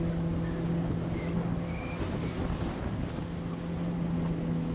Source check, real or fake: real